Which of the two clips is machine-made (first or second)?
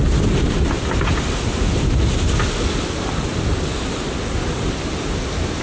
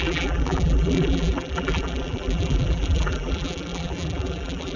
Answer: second